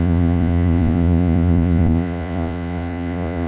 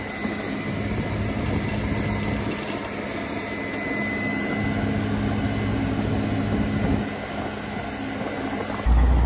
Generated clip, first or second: first